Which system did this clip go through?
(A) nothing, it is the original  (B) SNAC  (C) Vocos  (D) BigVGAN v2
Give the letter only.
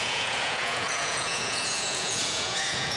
C